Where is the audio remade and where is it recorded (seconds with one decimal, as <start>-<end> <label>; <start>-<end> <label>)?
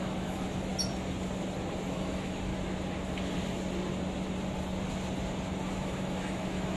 0.0-0.7 remade; 0.7-1.9 recorded; 1.9-2.5 remade; 2.5-5.7 recorded; 5.7-6.8 remade